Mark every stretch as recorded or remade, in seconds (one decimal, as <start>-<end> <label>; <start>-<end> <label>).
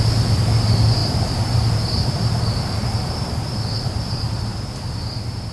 0.0-1.0 recorded; 1.0-4.3 remade; 4.3-5.5 recorded